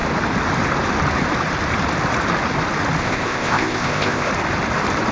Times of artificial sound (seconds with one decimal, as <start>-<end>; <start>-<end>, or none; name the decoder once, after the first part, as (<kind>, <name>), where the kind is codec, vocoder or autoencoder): 3.0-4.3 (codec, ZipCodec)